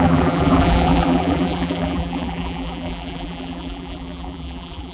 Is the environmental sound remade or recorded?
remade